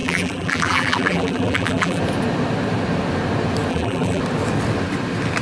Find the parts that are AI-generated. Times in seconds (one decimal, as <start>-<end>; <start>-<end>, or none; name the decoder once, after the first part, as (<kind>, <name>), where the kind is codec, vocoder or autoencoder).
0.0-2.0 (vocoder, BigVGAN v2); 3.7-4.2